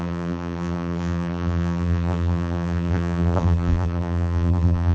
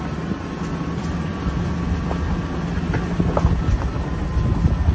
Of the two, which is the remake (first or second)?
first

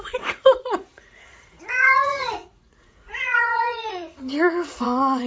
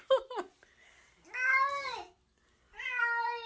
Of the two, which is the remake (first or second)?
first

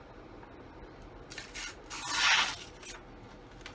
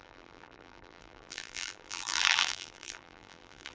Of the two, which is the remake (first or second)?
second